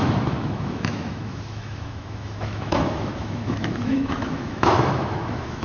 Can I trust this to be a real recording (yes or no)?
no